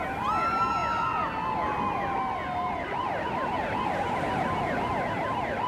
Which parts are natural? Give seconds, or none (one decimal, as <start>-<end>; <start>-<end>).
0.0-5.7

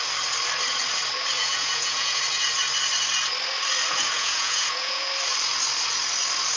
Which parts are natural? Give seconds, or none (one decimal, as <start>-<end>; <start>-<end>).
0.0-1.4; 2.2-3.9; 5.1-6.6

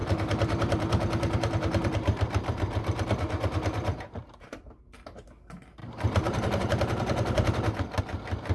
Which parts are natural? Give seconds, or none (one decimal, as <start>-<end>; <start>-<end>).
4.8-5.8; 8.0-8.5

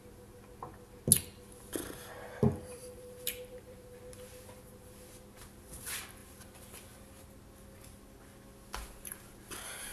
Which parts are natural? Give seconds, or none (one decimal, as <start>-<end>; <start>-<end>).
0.0-2.6; 4.0-9.9

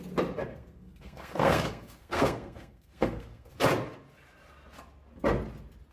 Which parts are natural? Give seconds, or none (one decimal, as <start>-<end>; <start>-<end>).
0.0-0.5; 3.5-5.9

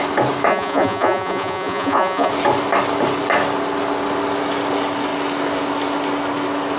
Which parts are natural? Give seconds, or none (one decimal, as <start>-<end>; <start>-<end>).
0.0-0.5; 2.3-6.8